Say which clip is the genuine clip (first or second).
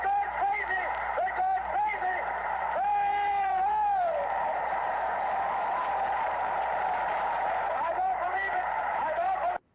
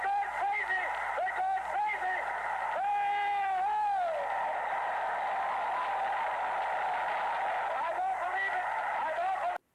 second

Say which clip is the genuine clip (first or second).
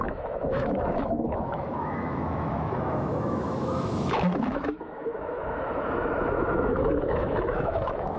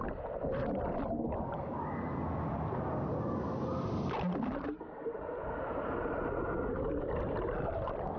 second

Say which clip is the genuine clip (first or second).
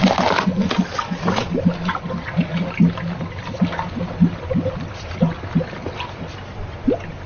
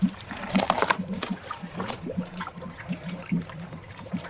first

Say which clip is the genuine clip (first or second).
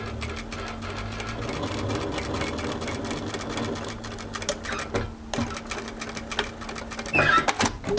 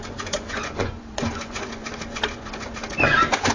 first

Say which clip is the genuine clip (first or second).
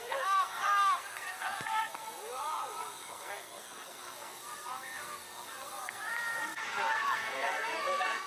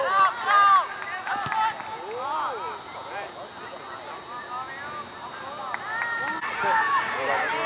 second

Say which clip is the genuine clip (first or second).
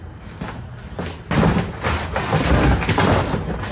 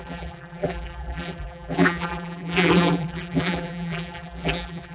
first